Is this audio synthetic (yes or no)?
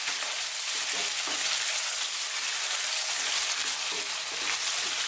no